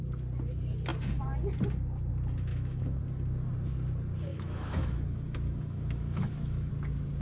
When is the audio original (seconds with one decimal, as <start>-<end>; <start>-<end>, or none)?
0.0-2.5; 3.0-4.3; 6.7-7.2